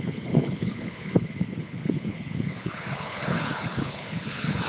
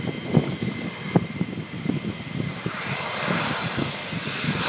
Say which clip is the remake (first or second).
first